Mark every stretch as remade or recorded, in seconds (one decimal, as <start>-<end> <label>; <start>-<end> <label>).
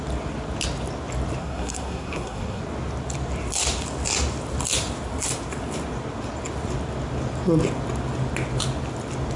0.0-1.4 recorded; 1.4-2.6 remade; 2.6-9.4 recorded